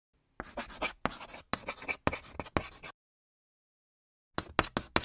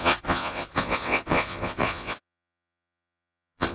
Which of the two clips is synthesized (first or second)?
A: second